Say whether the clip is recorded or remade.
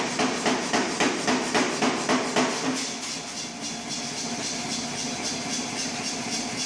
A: recorded